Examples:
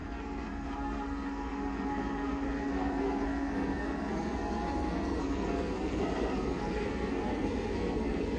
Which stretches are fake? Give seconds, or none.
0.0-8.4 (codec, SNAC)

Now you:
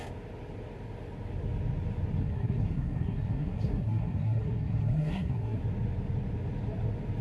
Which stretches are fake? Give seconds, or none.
2.2-5.6 (codec, SNAC)

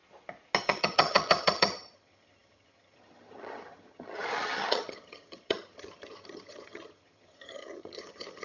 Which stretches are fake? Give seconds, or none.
0.6-8.4 (vocoder, HiFi-GAN)

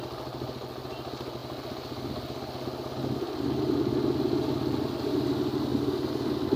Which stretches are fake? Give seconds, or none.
none

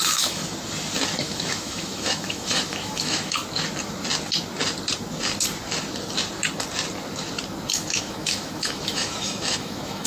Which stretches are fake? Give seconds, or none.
0.0-0.4 (autoencoder, DAC-VAE); 1.2-3.4; 7.7-10.1

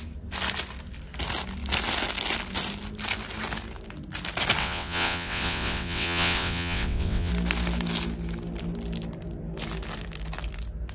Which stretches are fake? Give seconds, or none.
4.6-7.3 (vocoder, WaveNeXt)